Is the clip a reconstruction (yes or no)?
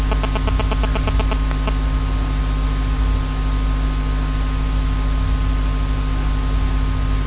no